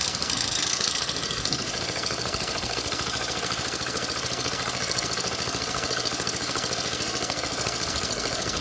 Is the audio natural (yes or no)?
no